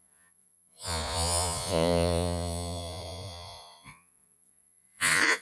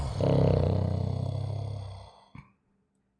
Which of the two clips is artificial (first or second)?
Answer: first